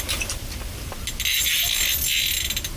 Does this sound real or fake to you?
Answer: real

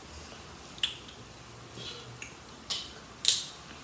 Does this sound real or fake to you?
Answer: real